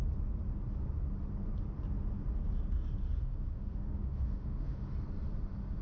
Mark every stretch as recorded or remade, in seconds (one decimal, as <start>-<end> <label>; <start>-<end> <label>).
0.0-3.2 recorded; 3.2-4.9 remade; 4.9-5.8 recorded